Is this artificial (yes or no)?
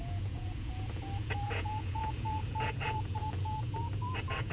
yes